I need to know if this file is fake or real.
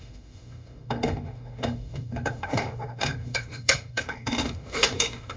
fake